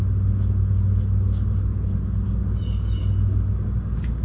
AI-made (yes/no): no